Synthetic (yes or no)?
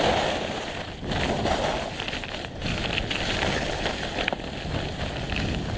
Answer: no